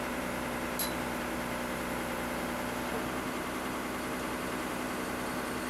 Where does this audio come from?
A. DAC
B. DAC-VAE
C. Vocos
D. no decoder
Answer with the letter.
D